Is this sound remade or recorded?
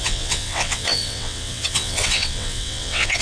remade